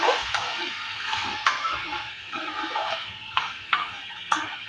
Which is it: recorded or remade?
remade